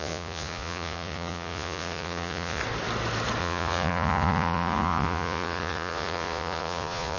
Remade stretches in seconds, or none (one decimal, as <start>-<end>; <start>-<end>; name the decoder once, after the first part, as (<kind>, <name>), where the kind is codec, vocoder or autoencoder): 0.0-2.6 (vocoder, Vocos); 3.4-7.2

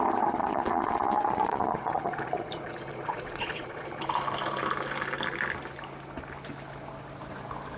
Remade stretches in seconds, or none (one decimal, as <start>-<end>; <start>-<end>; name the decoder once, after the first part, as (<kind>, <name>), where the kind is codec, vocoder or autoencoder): 0.4-4.0 (vocoder, Vocos)

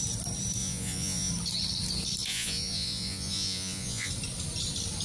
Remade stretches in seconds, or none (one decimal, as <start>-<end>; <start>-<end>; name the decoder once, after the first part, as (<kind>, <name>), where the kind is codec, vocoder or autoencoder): 0.6-1.3 (vocoder, Vocos); 2.3-4.1

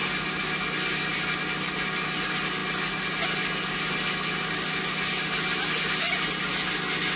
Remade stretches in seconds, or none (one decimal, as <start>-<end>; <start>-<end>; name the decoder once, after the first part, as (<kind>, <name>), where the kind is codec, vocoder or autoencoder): none